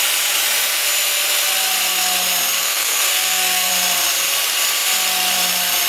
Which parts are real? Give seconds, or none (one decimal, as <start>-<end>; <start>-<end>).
0.0-2.6; 3.7-5.9